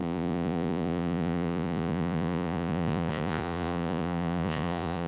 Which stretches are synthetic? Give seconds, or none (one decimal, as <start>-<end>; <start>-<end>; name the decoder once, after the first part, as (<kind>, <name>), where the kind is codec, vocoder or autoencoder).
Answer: 0.0-5.1 (vocoder, Vocos)